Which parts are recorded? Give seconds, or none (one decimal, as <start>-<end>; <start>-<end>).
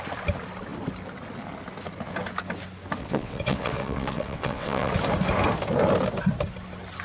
0.0-3.0; 4.9-7.0